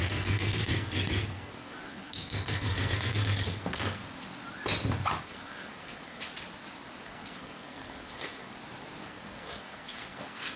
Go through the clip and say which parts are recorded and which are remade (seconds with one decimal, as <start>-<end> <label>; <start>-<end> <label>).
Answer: 0.0-4.0 remade; 4.0-5.2 recorded; 5.2-6.3 remade; 6.3-7.0 recorded; 7.0-8.5 remade; 8.5-9.0 recorded; 9.0-10.6 remade